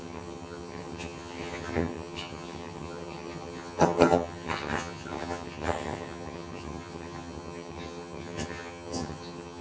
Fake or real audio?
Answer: fake